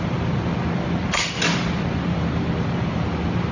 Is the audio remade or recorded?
recorded